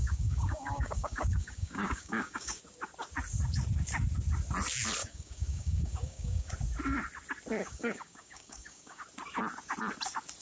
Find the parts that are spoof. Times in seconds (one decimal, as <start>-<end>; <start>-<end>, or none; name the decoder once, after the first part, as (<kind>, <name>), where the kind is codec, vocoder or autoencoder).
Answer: 0.0-2.6 (codec, DAC); 5.0-6.5; 7.6-9.0